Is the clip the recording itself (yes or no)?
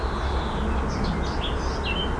yes